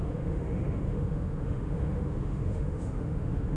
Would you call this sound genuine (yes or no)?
no